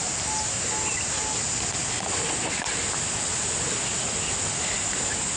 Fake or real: real